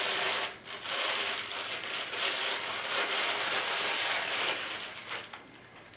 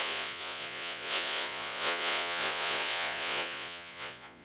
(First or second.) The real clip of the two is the first